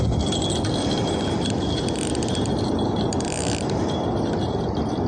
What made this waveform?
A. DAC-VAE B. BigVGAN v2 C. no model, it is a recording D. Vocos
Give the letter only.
C